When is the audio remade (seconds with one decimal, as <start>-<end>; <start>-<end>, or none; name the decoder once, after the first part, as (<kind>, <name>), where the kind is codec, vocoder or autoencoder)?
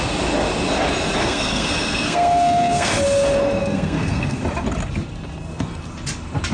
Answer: 1.2-2.9 (codec, SNAC); 3.6-4.4